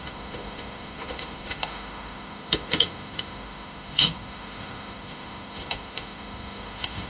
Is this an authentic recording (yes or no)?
no